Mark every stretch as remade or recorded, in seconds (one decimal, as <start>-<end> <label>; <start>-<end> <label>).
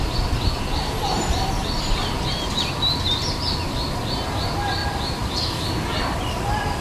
0.0-4.8 recorded; 4.8-6.8 remade